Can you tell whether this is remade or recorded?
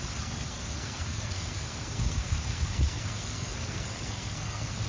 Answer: remade